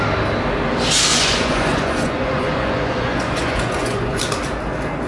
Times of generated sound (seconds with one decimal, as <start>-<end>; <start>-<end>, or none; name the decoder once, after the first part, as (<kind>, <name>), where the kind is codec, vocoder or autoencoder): 1.1-4.2 (vocoder, Vocos)